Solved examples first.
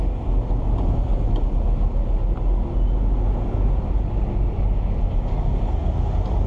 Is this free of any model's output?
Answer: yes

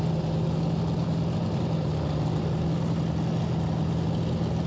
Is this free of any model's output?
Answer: yes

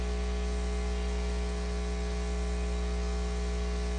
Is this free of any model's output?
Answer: yes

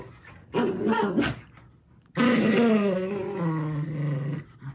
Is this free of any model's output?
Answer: yes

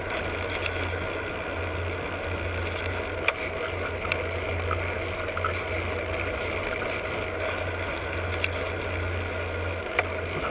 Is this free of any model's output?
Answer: yes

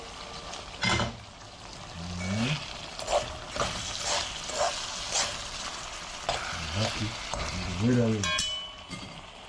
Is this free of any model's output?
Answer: yes